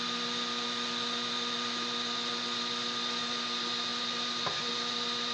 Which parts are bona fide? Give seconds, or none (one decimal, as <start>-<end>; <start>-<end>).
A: 0.0-5.3